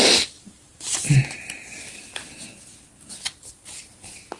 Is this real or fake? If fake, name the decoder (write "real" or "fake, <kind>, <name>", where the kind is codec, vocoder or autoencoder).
real